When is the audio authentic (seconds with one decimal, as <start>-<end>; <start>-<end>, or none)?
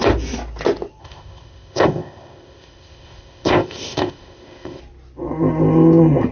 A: 0.0-1.0; 4.8-6.3